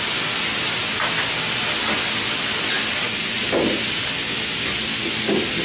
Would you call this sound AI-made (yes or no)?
no